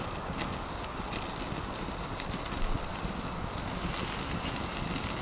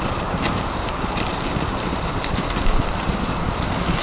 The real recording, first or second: first